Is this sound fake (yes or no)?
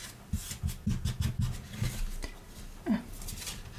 no